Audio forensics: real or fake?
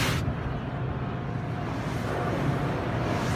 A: real